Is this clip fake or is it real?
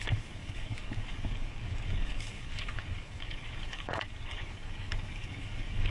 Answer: fake